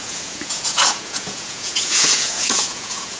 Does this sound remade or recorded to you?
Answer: remade